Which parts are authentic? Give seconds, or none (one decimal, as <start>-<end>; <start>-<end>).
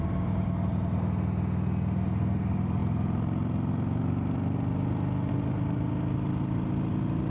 0.0-7.3